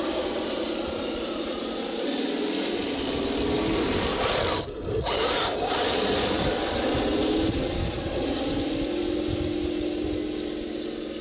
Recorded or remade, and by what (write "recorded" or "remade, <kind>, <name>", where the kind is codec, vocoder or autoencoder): recorded